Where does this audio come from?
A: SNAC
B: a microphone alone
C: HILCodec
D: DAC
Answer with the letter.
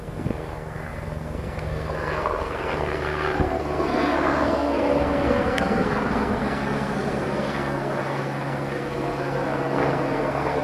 A